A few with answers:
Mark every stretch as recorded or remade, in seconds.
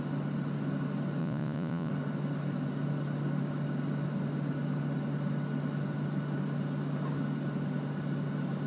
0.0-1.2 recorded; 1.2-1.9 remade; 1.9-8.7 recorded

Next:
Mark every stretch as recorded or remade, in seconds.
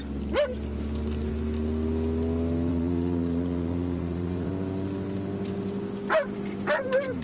0.0-2.7 recorded; 2.7-4.5 remade; 4.5-7.2 recorded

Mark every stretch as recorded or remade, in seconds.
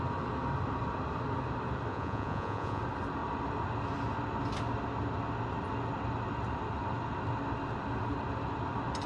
0.0-1.9 recorded; 1.9-2.8 remade; 2.8-9.1 recorded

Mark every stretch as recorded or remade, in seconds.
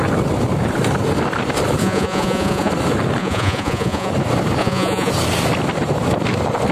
0.0-1.8 recorded; 1.8-2.7 remade; 2.7-3.2 recorded; 3.2-4.1 remade; 4.1-4.6 recorded; 4.6-5.1 remade; 5.1-6.7 recorded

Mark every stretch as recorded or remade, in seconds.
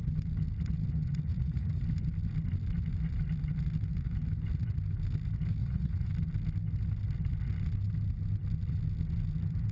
0.0-1.3 recorded; 1.3-1.8 remade; 1.8-5.6 recorded; 5.6-6.1 remade; 6.1-9.7 recorded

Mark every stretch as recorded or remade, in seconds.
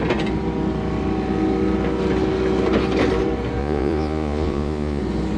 0.0-3.6 recorded; 3.6-5.0 remade; 5.0-5.4 recorded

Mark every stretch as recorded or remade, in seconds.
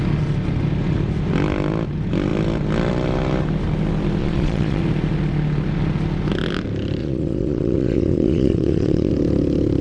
0.0-4.2 recorded; 4.2-4.8 remade; 4.8-7.0 recorded; 7.0-9.1 remade; 9.1-9.8 recorded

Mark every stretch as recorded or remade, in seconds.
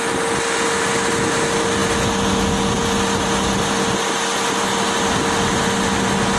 0.0-6.4 recorded